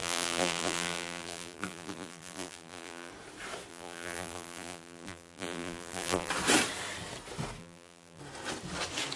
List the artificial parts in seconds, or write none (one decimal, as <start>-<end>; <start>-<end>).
0.0-3.1; 3.7-6.3; 7.6-8.2